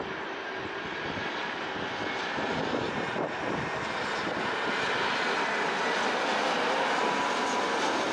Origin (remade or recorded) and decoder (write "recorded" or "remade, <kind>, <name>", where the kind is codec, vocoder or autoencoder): recorded